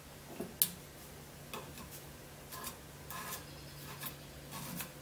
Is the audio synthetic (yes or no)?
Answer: no